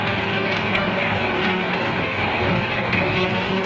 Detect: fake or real fake